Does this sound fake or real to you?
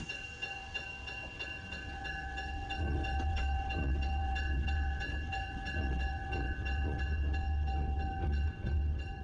fake